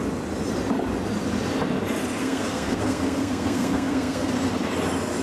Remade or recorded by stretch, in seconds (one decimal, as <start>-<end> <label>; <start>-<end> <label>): 0.0-2.2 recorded; 2.2-4.3 remade; 4.3-5.2 recorded